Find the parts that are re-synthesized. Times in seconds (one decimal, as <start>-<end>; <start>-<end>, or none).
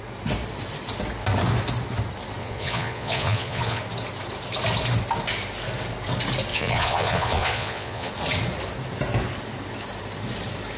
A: 2.4-3.8; 6.5-8.1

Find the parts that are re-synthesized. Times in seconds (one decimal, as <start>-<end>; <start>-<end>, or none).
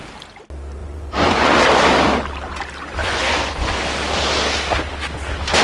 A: 0.8-1.6; 3.0-3.8